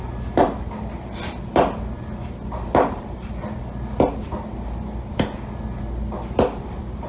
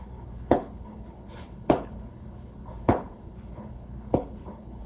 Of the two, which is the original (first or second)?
first